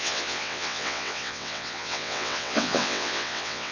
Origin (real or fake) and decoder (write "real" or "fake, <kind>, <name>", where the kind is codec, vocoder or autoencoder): fake, vocoder, WaveNeXt